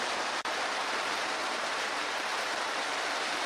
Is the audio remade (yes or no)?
yes